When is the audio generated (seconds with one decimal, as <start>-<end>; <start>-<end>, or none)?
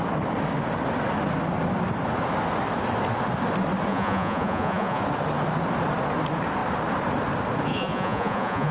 3.9-5.0; 7.7-8.7